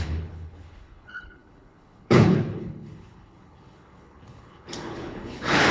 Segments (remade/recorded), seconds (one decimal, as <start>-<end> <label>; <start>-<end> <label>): 0.0-5.7 remade